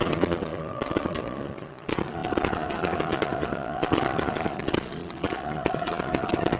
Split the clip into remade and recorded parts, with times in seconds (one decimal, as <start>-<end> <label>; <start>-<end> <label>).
0.0-6.6 remade